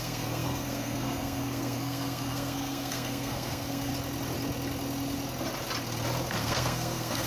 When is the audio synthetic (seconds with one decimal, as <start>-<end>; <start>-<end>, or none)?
0.0-3.9; 6.3-7.3